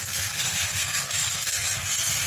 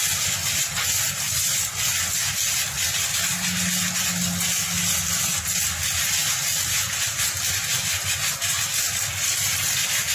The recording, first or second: second